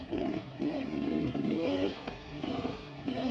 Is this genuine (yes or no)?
no